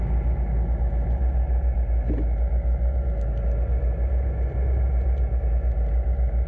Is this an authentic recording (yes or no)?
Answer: yes